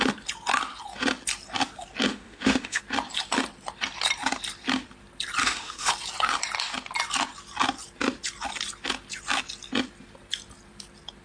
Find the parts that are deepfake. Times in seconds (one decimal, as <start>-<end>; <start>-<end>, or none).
2.1-2.8; 5.4-5.9